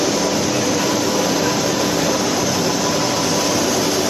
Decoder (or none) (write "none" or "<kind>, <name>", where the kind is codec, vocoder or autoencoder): vocoder, BigVGAN v2